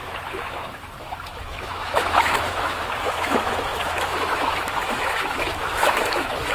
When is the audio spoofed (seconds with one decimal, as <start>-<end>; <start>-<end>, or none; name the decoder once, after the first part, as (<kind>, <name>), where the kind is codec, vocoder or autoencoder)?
0.0-6.5 (autoencoder, DAC-VAE)